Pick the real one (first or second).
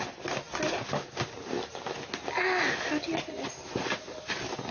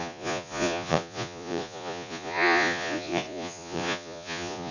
first